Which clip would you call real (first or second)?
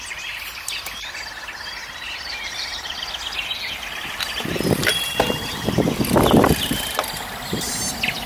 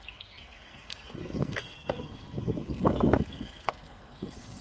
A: first